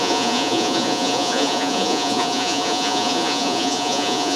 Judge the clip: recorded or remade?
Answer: remade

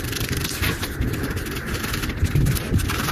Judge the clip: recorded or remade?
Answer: remade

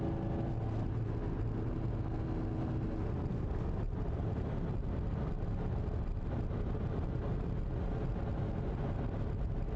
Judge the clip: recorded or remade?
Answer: recorded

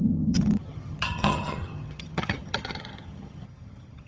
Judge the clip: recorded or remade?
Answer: remade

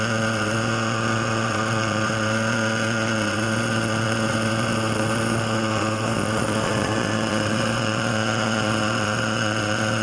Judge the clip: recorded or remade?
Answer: remade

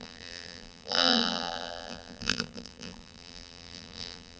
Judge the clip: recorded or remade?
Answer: remade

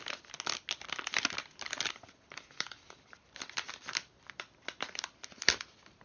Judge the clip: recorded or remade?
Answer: recorded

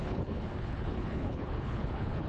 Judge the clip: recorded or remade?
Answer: remade